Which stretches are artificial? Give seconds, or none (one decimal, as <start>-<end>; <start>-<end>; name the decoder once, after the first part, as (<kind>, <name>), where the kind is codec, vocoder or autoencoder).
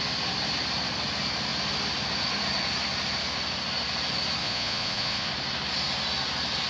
4.4-5.3 (vocoder, Vocos)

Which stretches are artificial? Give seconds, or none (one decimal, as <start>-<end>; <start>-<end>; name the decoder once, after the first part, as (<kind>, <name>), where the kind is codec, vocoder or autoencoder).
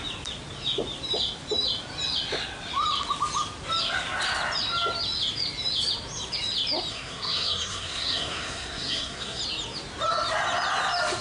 6.9-9.4 (codec, SNAC)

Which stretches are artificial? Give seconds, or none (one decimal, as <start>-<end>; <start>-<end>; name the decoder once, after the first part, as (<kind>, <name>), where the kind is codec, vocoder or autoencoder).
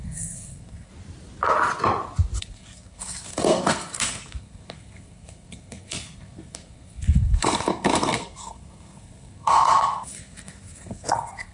0.0-0.9 (codec, SNAC); 2.4-11.5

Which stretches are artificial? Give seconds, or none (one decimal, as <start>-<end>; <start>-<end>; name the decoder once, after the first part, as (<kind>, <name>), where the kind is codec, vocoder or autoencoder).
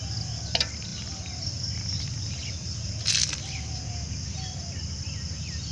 0.9-3.0 (vocoder, BigVGAN v2)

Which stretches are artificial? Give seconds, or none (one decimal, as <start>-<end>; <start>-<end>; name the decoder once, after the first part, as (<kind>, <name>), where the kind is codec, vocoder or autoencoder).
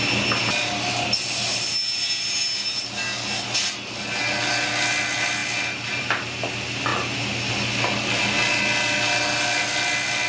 none